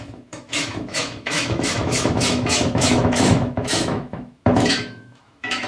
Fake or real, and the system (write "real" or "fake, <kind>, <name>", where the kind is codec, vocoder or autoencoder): fake, autoencoder, DAC-VAE